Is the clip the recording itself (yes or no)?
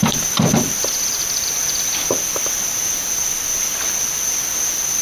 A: yes